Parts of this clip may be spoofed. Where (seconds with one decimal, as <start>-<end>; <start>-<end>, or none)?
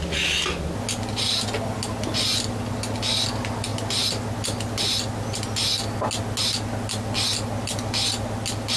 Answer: none